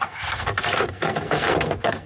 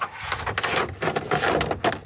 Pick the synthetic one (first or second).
first